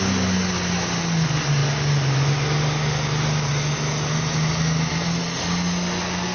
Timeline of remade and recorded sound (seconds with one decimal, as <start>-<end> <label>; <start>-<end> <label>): 0.0-6.3 recorded